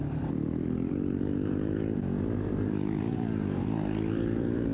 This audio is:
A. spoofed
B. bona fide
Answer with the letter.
A